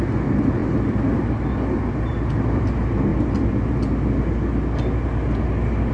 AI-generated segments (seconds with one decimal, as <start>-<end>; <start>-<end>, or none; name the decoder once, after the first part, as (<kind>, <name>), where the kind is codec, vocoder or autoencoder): none